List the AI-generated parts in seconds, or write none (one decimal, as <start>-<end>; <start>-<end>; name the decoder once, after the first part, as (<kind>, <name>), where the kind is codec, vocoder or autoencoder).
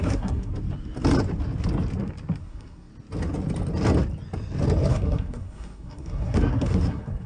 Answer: 0.0-0.5 (codec, SNAC); 2.4-2.9; 4.9-7.3